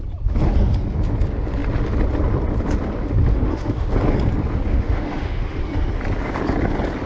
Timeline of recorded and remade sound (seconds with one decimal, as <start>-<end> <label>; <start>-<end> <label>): 0.0-3.3 recorded; 3.3-3.9 remade; 3.9-4.7 recorded; 4.7-5.6 remade; 5.6-7.1 recorded

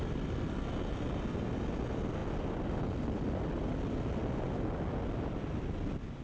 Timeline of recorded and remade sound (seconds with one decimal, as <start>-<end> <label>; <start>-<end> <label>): 0.0-6.2 recorded

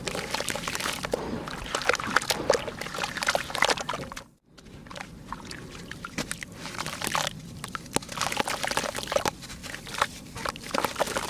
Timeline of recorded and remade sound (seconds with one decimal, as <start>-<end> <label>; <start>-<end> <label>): 0.0-11.3 recorded